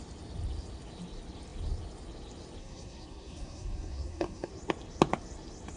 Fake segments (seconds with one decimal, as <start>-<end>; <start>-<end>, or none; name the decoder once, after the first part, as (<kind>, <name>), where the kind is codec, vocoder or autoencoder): 2.6-4.5 (codec, SNAC)